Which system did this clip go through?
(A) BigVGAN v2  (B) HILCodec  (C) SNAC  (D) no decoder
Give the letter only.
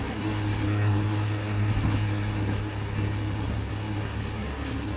C